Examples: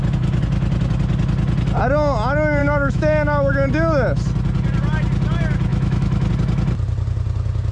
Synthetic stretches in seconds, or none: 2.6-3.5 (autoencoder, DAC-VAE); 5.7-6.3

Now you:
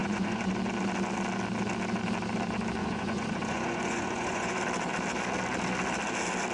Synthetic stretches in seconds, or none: 0.0-0.5 (vocoder, Vocos); 2.8-4.6

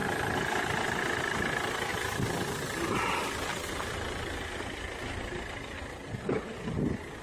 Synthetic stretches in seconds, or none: 0.0-1.0 (vocoder, BigVGAN v2); 1.9-6.2

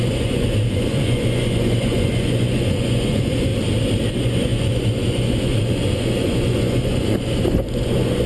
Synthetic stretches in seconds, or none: 0.0-3.5 (vocoder, Vocos); 4.1-8.3

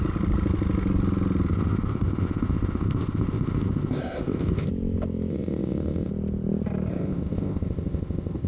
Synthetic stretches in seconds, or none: 1.5-4.7 (codec, ZipCodec); 5.3-6.1; 6.9-8.5

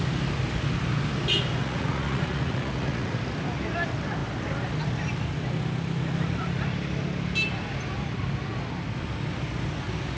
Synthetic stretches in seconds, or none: 1.6-3.2 (vocoder, Vocos)

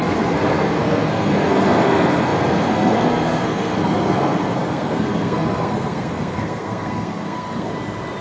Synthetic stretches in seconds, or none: 0.0-7.7 (codec, SNAC)